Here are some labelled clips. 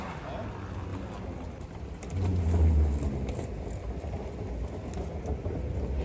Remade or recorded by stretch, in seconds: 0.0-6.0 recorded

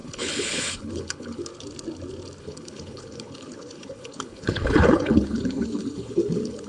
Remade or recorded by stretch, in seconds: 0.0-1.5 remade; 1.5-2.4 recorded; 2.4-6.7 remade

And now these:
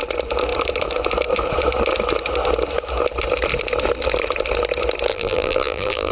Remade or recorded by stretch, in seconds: 0.0-5.1 recorded; 5.1-6.1 remade

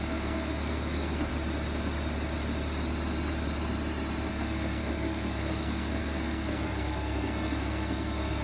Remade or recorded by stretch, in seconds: 0.0-1.3 remade; 1.3-4.3 recorded; 4.3-8.4 remade